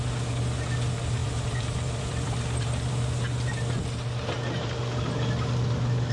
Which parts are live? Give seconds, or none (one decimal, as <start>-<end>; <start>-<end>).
0.0-1.2; 2.9-6.1